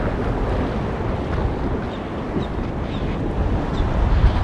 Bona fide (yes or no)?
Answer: yes